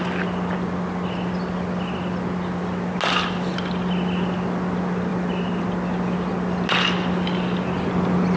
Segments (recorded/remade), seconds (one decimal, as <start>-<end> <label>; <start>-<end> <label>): 0.0-8.4 recorded